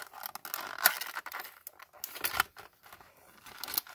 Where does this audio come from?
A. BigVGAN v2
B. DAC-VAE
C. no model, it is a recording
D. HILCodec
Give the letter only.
C